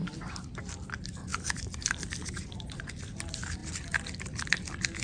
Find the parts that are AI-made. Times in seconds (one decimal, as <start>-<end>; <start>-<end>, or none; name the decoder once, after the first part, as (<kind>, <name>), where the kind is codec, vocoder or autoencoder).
1.3-2.9 (vocoder, BigVGAN v2)